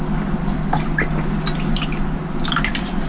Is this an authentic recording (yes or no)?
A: yes